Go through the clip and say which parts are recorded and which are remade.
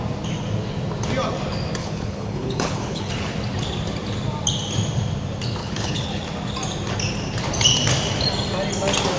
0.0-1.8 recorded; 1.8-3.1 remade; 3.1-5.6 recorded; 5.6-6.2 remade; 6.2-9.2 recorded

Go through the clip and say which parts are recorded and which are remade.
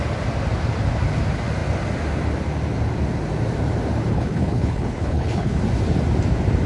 0.0-4.1 recorded; 4.1-5.6 remade; 5.6-6.7 recorded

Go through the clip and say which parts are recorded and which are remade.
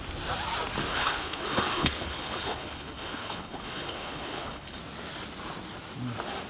0.0-0.9 recorded; 0.9-4.8 remade; 4.8-6.5 recorded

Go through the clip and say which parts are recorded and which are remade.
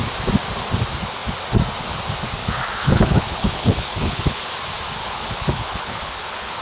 0.0-2.4 recorded; 2.4-4.4 remade; 4.4-5.0 recorded; 5.0-6.6 remade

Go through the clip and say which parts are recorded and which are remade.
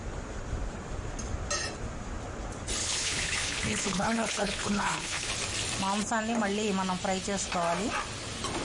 0.0-2.8 recorded; 2.8-5.3 remade; 5.3-8.6 recorded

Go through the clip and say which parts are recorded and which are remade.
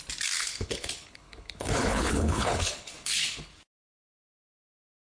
0.0-0.4 recorded; 0.4-3.5 remade; 3.5-5.2 recorded